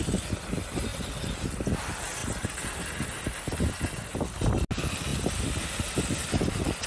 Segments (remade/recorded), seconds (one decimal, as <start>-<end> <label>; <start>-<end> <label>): 0.0-0.9 recorded; 0.9-1.5 remade; 1.5-6.9 recorded